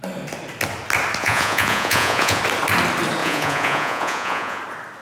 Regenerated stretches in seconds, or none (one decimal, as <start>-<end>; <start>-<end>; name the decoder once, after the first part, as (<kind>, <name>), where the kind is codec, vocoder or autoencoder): 1.2-2.4 (vocoder, Vocos); 3.2-4.6